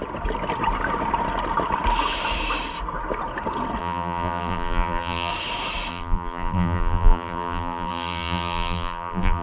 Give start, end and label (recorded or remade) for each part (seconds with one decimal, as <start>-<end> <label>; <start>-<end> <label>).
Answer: 0.0-3.8 recorded; 3.8-5.3 remade; 5.3-5.9 recorded; 5.9-9.4 remade